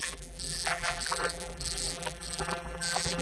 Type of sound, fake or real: fake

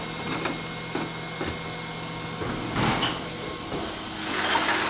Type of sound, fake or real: real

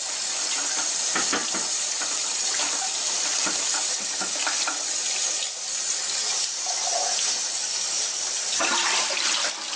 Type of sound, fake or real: real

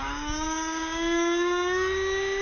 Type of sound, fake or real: fake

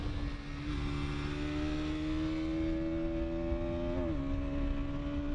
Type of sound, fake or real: real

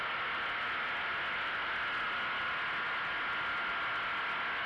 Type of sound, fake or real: real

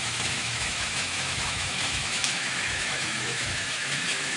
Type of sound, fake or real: fake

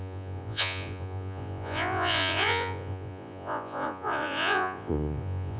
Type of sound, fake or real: fake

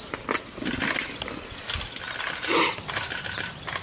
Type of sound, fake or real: real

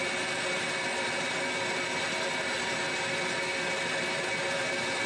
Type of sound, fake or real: real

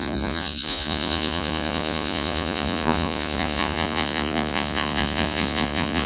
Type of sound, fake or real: fake